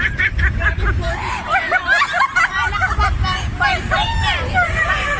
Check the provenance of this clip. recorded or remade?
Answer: remade